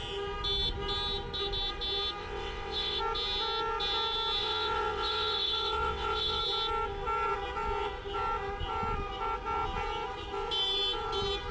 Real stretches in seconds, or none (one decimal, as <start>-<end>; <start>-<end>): 0.0-2.2; 3.0-4.4; 6.4-11.5